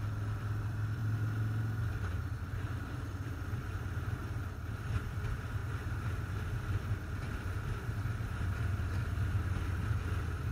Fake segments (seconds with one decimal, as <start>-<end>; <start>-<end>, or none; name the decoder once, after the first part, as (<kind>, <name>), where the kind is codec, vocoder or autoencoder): 0.0-1.0 (vocoder, BigVGAN v2); 2.0-10.5

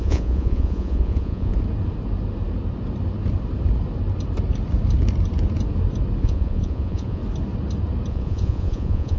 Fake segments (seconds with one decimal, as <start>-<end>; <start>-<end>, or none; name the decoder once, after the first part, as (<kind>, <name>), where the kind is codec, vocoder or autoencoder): 0.0-1.5 (vocoder, Vocos); 6.2-7.2; 8.1-9.2

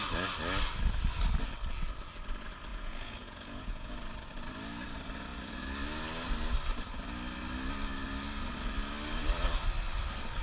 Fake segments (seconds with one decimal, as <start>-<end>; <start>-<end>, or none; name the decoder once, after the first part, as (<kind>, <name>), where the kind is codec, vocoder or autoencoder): 2.7-3.9 (vocoder, Vocos)

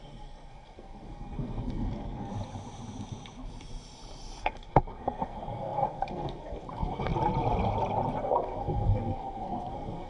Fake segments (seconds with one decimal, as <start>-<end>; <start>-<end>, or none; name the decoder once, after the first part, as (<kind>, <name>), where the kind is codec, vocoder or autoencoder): 0.0-2.3 (codec, SNAC); 4.4-7.1; 8.2-10.1

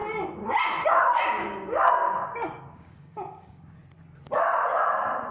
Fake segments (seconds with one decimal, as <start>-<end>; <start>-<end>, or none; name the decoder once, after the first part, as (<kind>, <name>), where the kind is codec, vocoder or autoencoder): 1.2-3.8 (codec, DAC)

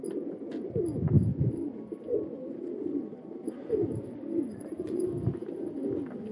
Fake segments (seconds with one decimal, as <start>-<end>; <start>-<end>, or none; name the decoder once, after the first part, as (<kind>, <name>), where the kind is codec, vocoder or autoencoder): 4.5-5.1 (vocoder, Vocos)

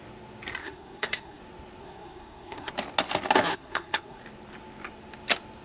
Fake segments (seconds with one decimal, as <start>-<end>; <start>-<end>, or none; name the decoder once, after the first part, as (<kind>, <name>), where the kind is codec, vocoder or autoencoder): 0.6-1.4 (codec, SNAC); 1.8-2.7; 3.5-4.2